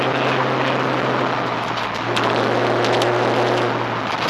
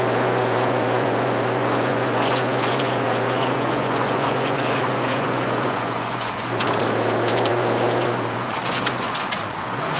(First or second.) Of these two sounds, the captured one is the first